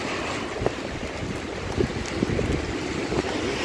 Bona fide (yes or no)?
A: yes